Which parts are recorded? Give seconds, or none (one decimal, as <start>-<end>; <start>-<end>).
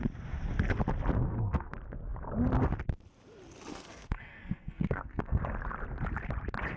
0.0-1.2; 1.7-3.7; 5.4-6.8